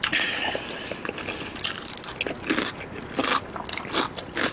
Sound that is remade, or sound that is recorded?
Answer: recorded